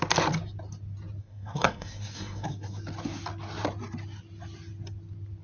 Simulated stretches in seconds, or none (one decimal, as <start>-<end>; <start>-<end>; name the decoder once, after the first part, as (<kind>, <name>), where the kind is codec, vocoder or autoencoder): 1.2-2.8 (codec, SNAC)